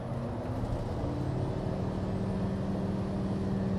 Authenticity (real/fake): real